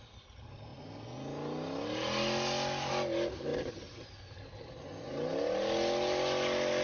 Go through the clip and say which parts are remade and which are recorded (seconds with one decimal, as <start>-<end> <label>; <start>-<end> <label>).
0.0-6.8 recorded